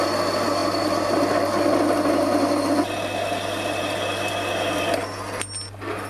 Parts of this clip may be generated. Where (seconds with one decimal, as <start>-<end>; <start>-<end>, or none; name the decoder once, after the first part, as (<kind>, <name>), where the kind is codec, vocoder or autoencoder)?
none